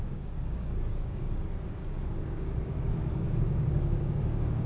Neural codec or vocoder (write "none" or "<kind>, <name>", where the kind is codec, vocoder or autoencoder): codec, DAC